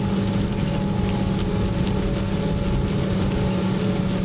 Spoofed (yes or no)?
no